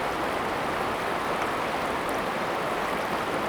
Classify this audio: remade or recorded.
recorded